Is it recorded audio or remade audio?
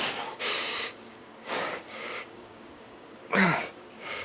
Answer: remade